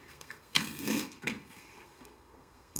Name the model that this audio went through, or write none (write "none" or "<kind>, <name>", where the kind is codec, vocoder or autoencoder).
codec, SNAC